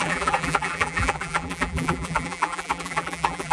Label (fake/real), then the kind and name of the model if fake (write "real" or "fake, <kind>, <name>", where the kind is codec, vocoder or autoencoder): fake, vocoder, BigVGAN v2